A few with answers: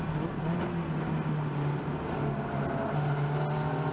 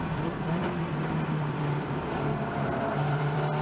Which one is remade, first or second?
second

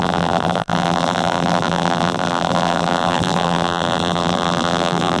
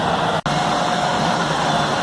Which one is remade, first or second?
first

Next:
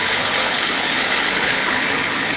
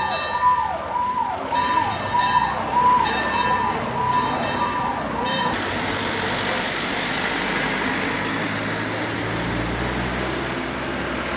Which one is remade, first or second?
first